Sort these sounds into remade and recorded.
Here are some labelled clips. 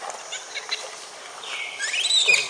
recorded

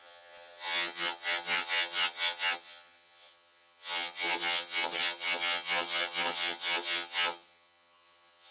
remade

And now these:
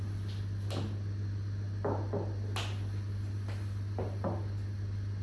recorded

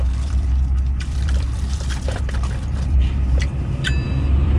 remade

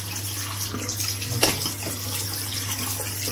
recorded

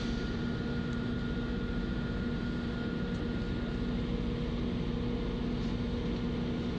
recorded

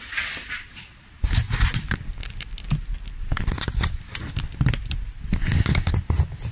recorded